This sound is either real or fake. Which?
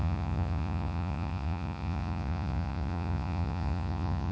fake